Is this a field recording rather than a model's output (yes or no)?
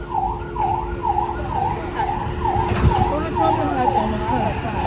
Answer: yes